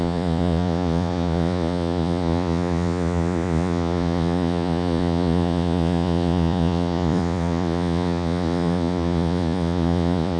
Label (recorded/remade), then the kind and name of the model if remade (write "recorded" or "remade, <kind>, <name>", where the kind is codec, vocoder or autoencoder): remade, vocoder, Vocos